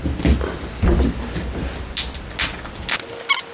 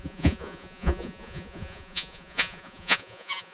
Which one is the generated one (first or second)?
second